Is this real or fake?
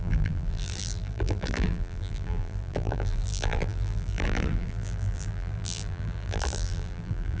fake